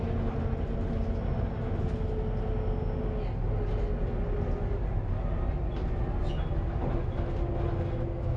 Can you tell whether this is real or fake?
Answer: real